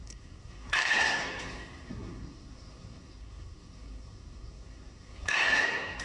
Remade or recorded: remade